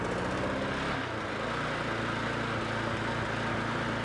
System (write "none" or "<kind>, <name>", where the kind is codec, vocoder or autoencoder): none